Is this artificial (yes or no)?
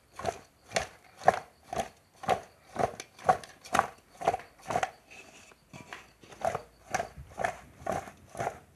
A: no